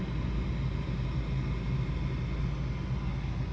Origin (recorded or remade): recorded